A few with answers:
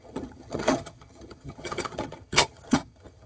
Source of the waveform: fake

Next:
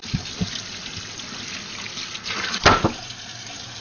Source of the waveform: real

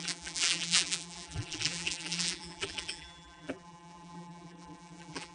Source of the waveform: fake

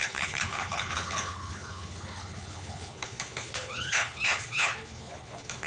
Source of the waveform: fake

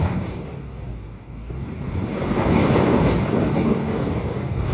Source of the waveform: fake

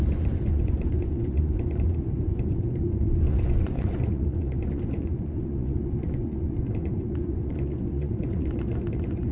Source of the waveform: fake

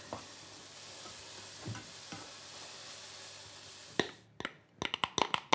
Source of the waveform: real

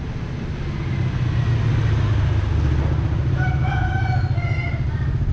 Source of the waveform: real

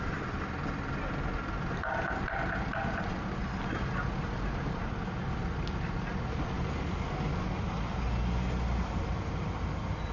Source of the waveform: real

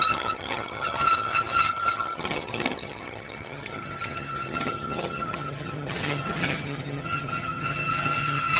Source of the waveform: fake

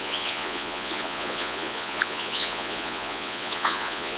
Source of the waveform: fake